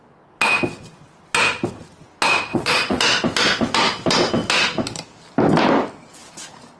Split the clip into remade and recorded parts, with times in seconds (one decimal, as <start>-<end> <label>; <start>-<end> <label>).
0.0-2.5 recorded; 2.5-3.0 remade; 3.0-6.8 recorded